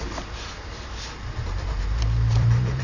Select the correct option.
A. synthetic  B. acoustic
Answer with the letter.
A